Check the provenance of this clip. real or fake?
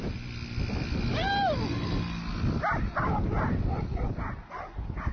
real